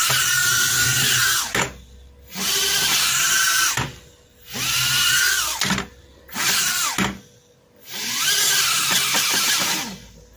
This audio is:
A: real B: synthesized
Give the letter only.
A